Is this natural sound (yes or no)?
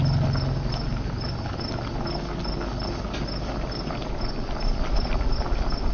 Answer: yes